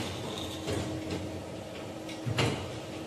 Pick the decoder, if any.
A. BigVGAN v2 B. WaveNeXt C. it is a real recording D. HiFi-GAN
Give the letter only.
C